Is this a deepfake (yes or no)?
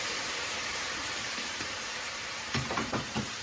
yes